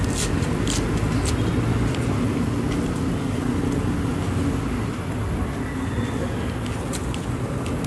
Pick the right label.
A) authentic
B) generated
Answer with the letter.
A